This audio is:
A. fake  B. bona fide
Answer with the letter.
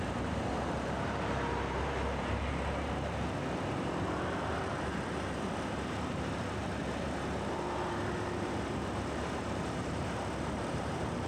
A